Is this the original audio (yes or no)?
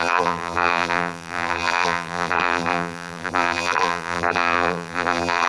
no